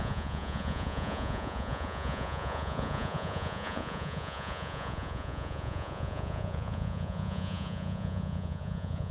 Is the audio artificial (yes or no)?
yes